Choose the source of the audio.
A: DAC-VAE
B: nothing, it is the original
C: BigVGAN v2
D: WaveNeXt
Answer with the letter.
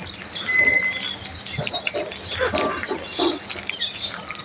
B